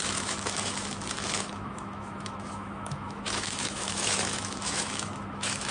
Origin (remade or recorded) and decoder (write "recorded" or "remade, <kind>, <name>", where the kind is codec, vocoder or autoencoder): remade, autoencoder, DAC-VAE